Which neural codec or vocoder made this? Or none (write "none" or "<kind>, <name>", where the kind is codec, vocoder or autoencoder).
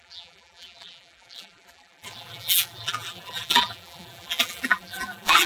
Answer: vocoder, BigVGAN v2